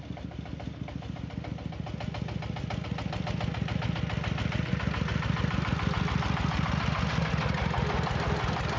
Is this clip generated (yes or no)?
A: no